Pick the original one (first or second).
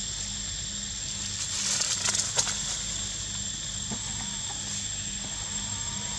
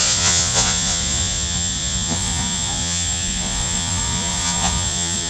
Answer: first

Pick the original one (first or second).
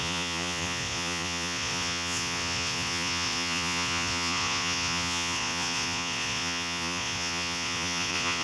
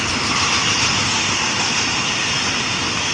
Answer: second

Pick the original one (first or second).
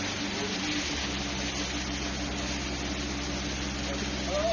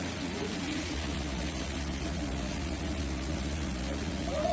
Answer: first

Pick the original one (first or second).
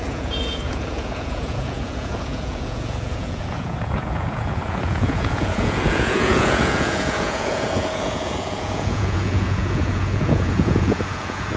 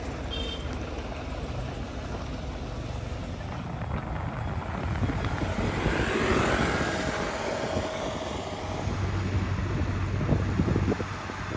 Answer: second